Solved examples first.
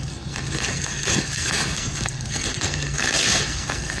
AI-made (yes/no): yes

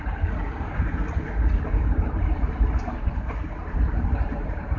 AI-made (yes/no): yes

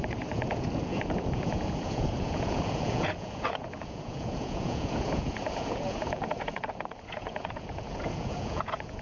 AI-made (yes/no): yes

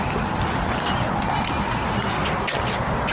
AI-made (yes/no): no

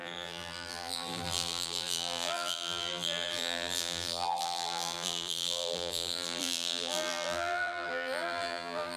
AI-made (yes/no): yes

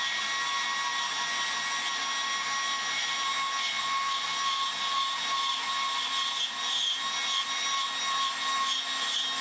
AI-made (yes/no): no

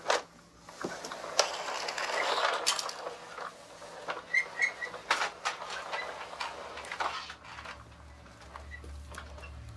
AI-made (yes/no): no